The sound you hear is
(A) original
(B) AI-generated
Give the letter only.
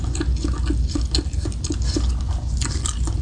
A